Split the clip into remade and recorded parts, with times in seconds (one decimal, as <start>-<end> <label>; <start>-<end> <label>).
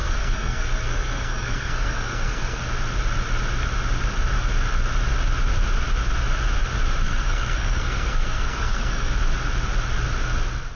0.0-2.6 remade; 2.6-7.0 recorded; 7.0-9.1 remade; 9.1-10.8 recorded